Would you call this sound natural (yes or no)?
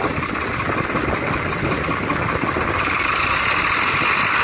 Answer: yes